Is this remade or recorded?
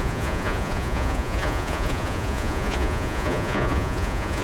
remade